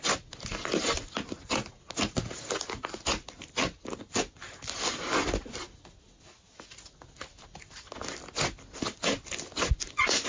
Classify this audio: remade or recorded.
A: recorded